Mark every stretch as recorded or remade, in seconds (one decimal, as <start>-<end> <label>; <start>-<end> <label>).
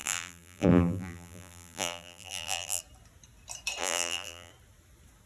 0.0-2.8 remade; 2.8-3.8 recorded; 3.8-4.5 remade; 4.5-5.3 recorded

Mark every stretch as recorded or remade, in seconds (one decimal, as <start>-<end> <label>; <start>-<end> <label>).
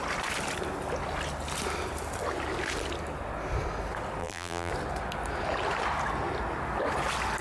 0.0-4.2 recorded; 4.2-4.7 remade; 4.7-7.4 recorded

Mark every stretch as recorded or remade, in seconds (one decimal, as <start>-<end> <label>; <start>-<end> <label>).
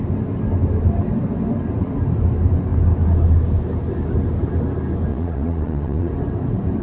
0.0-5.1 recorded; 5.1-6.1 remade; 6.1-6.8 recorded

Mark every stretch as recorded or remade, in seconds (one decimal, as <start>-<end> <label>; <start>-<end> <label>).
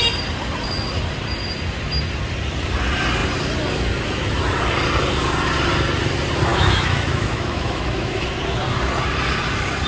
0.0-6.5 recorded; 6.5-8.2 remade; 8.2-9.9 recorded